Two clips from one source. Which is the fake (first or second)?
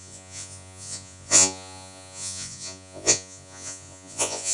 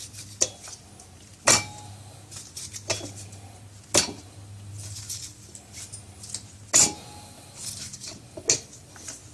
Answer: first